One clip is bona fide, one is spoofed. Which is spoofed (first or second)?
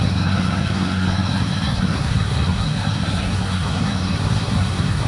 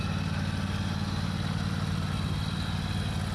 first